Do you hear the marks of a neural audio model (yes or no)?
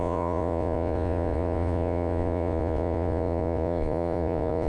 yes